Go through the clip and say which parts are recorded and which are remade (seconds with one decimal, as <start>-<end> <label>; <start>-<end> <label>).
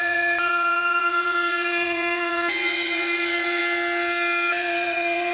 0.0-3.6 remade; 3.6-4.5 recorded; 4.5-5.3 remade